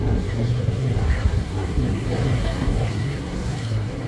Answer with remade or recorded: remade